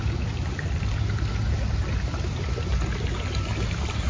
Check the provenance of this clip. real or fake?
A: real